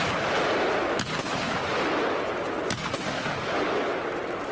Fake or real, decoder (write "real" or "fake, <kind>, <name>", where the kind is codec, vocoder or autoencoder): real